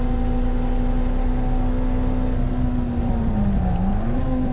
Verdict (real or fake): real